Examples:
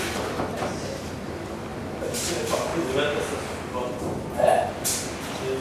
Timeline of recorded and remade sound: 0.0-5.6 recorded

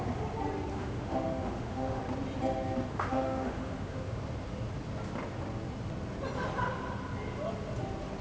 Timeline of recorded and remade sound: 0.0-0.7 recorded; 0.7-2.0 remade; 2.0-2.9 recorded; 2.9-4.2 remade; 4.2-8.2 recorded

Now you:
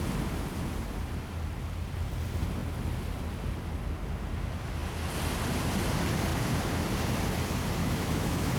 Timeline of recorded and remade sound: 0.0-7.8 recorded; 7.8-8.6 remade